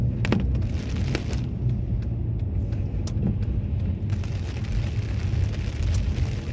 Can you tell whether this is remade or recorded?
recorded